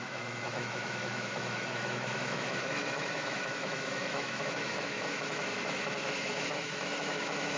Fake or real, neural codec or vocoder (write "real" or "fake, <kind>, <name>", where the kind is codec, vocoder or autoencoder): fake, autoencoder, DAC-VAE